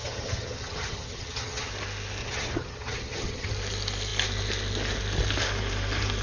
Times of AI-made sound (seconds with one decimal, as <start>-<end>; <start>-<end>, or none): 0.0-1.7; 2.2-3.5